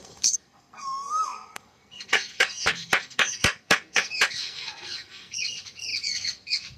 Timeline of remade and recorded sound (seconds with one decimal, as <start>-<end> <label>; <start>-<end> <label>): 0.0-6.8 remade